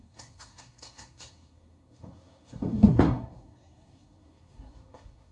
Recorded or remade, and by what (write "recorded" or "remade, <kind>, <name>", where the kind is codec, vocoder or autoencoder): remade, codec, SNAC